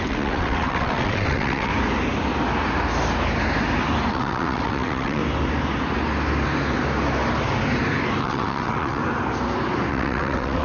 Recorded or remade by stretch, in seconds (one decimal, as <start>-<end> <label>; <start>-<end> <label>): 0.0-1.7 remade; 1.7-4.1 recorded; 4.1-5.2 remade; 5.2-8.2 recorded; 8.2-9.0 remade; 9.0-9.9 recorded; 9.9-10.6 remade